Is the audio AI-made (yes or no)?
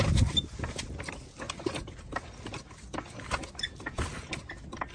no